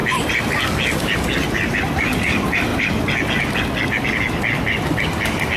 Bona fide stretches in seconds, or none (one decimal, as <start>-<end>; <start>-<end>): 0.0-5.6